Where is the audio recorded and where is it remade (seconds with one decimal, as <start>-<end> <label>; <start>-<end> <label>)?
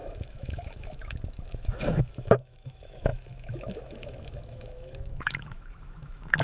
0.0-6.4 remade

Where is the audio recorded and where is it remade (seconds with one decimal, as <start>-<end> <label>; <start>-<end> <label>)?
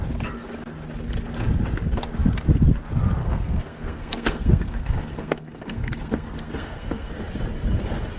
0.0-3.2 recorded; 3.2-7.1 remade; 7.1-8.2 recorded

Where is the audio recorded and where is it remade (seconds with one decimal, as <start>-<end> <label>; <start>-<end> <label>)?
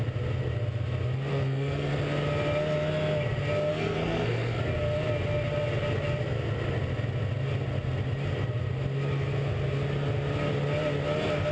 0.0-1.3 recorded; 1.3-1.9 remade; 1.9-3.7 recorded; 3.7-4.6 remade; 4.6-11.5 recorded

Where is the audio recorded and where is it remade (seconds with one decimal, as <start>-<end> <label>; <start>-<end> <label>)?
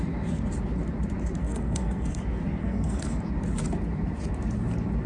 0.0-1.4 recorded; 1.4-2.2 remade; 2.2-2.6 recorded; 2.6-3.2 remade; 3.2-5.1 recorded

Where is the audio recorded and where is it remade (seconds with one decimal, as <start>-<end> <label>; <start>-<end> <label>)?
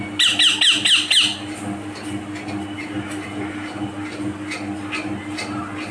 0.0-5.9 recorded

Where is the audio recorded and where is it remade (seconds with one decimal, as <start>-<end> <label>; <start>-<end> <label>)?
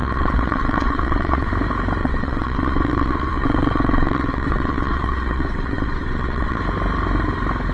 0.0-1.5 remade; 1.5-2.0 recorded; 2.0-6.6 remade; 6.6-7.7 recorded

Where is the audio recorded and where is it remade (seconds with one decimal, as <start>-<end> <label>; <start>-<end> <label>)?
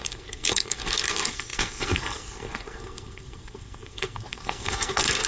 0.0-5.3 remade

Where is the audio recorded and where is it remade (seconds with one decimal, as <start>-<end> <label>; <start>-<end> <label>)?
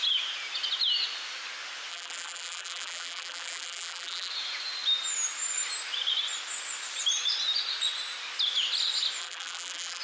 0.0-1.9 recorded; 1.9-4.3 remade; 4.3-9.2 recorded; 9.2-10.0 remade